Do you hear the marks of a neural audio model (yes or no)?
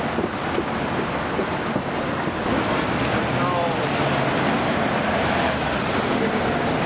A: no